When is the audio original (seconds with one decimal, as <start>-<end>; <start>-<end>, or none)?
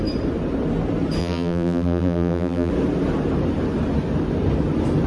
0.0-1.2; 2.7-5.1